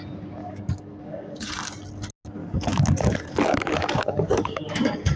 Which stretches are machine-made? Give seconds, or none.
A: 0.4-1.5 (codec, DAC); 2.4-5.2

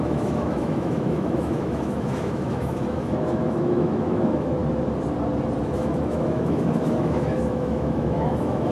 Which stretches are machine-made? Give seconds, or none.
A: 0.0-4.6 (autoencoder, DAC-VAE); 5.6-8.7

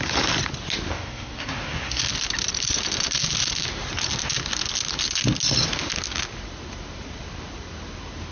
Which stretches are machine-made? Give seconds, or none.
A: 0.9-2.0 (codec, SNAC)